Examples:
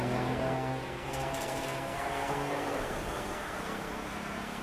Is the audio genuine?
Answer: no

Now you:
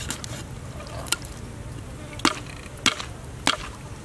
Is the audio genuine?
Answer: yes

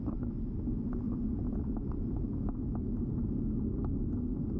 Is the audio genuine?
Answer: yes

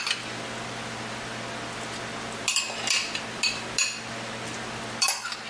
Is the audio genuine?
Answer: yes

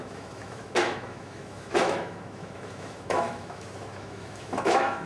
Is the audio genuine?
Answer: no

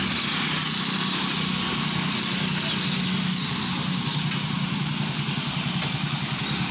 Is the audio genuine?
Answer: yes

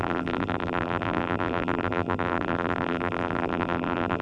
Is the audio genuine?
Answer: no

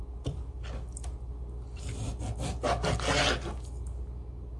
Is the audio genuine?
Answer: yes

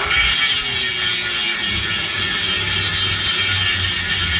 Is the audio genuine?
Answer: yes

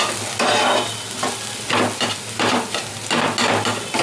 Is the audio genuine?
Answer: yes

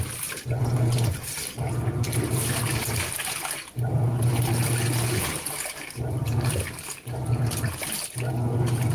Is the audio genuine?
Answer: yes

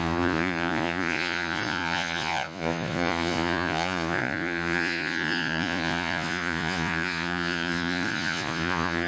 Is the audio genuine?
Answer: no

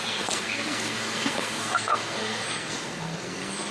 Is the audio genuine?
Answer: no